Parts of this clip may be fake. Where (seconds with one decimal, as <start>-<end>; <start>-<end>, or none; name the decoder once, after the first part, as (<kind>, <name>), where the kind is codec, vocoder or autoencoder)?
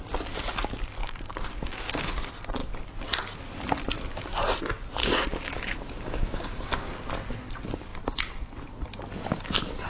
1.0-2.1 (codec, DAC); 5.0-6.9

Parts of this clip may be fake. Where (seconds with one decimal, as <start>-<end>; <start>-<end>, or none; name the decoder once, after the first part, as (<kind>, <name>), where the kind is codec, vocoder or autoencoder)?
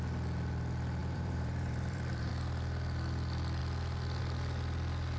1.0-2.3 (vocoder, BigVGAN v2)